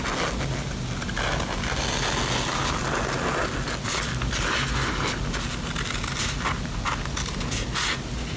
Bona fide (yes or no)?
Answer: yes